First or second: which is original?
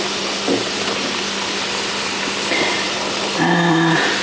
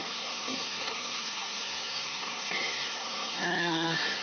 first